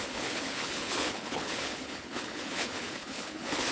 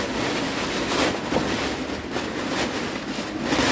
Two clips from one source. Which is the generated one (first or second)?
first